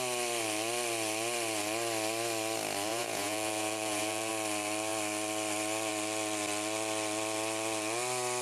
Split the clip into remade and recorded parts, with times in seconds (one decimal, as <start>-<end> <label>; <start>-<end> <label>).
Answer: 0.0-2.9 recorded; 2.9-4.3 remade; 4.3-8.4 recorded